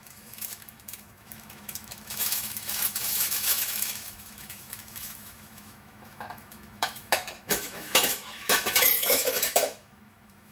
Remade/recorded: remade